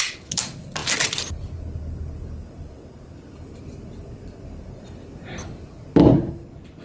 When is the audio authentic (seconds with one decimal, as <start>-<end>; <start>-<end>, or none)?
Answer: 0.0-6.8